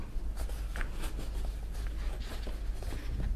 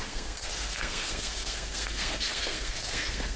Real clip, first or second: first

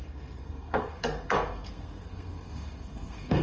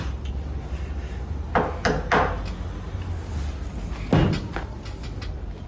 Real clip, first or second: second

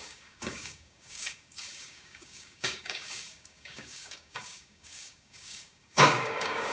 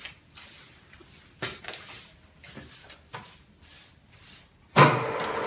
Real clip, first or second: second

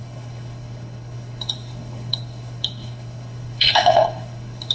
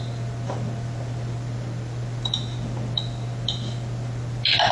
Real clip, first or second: second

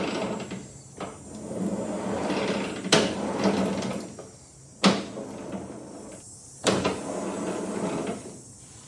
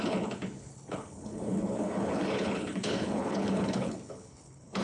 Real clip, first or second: first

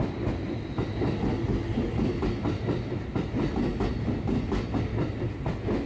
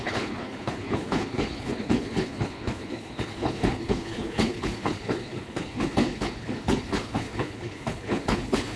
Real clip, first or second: first